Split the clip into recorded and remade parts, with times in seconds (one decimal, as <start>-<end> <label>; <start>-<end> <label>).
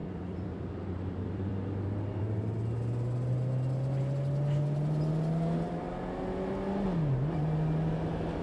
0.0-2.2 remade; 2.2-8.4 recorded